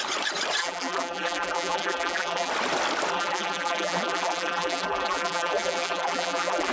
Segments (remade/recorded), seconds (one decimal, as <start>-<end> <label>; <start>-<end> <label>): 0.0-0.6 recorded; 0.6-2.5 remade; 2.5-3.1 recorded; 3.1-6.7 remade